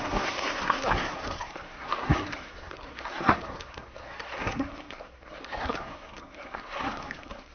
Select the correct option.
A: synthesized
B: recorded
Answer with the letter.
A